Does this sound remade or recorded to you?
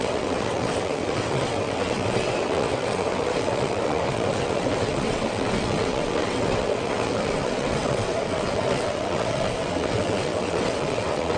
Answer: remade